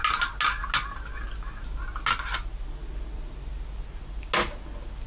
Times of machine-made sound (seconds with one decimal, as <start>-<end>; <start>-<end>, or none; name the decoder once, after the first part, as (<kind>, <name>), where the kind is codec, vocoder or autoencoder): none